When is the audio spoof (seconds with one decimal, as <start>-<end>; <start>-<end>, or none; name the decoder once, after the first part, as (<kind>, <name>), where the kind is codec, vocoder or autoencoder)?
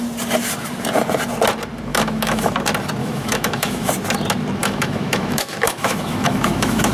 1.9-2.5 (autoencoder, DAC-VAE); 3.0-3.9; 4.6-6.9